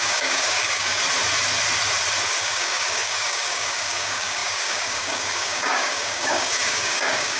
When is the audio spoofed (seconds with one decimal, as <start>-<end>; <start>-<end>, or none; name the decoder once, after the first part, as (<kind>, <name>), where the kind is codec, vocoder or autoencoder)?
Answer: 0.0-1.0 (codec, DAC); 2.4-7.4